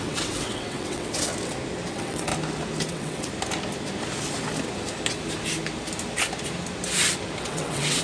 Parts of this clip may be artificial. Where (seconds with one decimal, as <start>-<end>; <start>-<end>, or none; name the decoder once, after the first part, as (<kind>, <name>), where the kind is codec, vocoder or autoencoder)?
0.0-1.3 (vocoder, WaveNeXt); 1.9-2.3; 2.9-3.3; 7.4-8.0